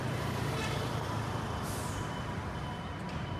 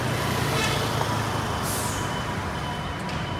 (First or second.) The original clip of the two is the second